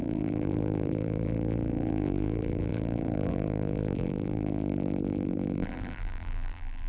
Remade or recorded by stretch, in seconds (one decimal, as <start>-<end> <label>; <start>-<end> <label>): 0.0-6.9 remade